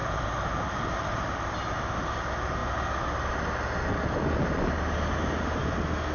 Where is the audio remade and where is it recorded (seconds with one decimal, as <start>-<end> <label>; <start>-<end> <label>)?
0.0-6.1 recorded